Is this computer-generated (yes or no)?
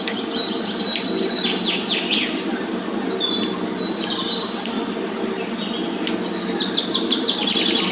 no